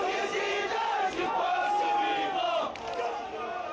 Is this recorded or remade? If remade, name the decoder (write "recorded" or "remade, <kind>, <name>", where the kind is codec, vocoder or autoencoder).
recorded